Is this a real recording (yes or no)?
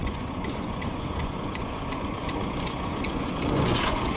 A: no